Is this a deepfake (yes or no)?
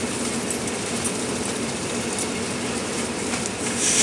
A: no